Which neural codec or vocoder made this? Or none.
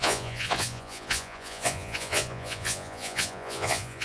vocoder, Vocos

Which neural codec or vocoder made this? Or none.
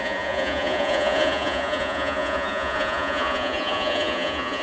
vocoder, Vocos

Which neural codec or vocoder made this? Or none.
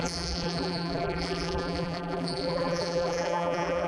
vocoder, BigVGAN v2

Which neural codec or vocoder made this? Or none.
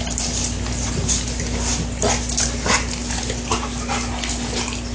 none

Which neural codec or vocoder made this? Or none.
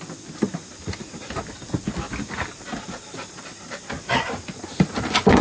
none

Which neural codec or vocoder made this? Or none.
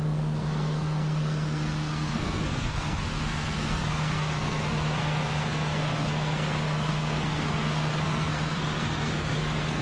codec, SNAC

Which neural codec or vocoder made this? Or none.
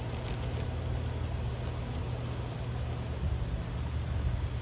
none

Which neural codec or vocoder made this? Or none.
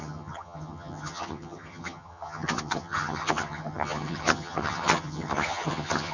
vocoder, HiFi-GAN